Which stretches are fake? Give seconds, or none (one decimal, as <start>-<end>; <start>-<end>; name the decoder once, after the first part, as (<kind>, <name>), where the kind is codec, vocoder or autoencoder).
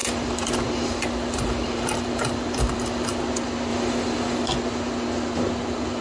0.0-3.2 (vocoder, BigVGAN v2); 3.7-4.5